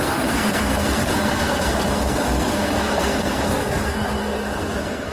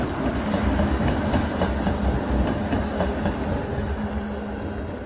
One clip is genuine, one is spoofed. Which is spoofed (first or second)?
first